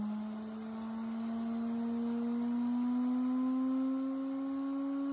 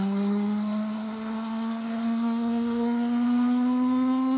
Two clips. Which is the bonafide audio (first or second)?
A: first